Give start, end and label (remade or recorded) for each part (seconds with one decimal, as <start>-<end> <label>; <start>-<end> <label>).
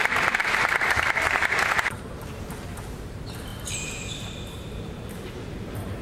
0.0-6.0 remade